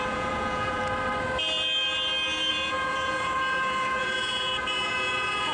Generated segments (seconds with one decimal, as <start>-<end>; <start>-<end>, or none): 0.0-0.8; 2.5-5.5

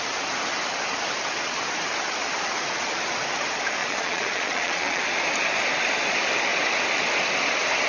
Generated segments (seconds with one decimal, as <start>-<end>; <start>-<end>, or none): 3.8-5.0

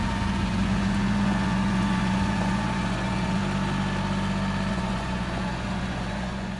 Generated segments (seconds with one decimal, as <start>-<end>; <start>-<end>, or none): 0.0-3.4; 4.7-6.6

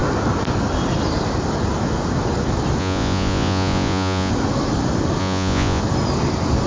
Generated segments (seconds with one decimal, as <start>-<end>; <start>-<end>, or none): 2.8-4.3; 5.2-5.8

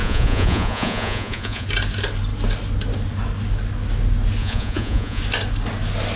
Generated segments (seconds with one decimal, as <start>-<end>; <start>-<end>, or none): 0.0-1.7; 4.4-5.2